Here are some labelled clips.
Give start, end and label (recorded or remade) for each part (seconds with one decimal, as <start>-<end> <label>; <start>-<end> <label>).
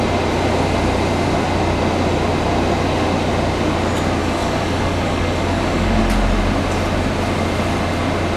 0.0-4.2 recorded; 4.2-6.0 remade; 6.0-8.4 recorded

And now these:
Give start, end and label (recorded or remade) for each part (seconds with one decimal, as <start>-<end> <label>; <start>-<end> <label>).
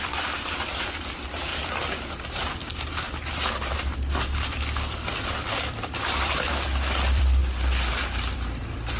0.0-1.5 remade; 1.5-4.1 recorded; 4.1-7.4 remade; 7.4-7.9 recorded; 7.9-9.0 remade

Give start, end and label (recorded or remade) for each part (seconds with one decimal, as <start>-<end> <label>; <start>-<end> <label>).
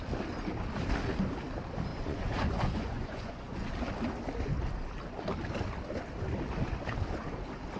0.0-1.9 recorded; 1.9-3.7 remade; 3.7-7.8 recorded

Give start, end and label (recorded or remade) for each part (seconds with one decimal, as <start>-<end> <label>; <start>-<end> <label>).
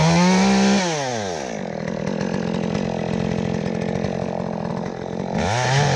0.0-6.0 recorded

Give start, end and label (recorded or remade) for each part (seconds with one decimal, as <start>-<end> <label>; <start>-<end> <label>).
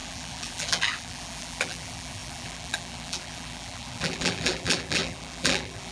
0.0-5.9 remade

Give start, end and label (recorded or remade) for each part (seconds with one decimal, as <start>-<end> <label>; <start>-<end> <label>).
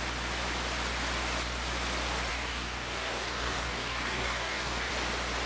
0.0-2.3 recorded; 2.3-4.9 remade; 4.9-5.5 recorded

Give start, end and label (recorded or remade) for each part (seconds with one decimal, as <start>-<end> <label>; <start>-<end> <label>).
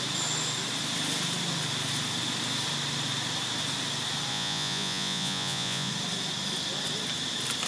0.0-4.3 recorded; 4.3-5.9 remade; 5.9-7.7 recorded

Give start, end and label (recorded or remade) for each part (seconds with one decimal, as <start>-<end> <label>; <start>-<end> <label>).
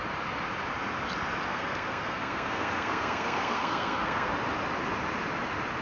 0.0-1.5 recorded; 1.5-4.3 remade; 4.3-5.8 recorded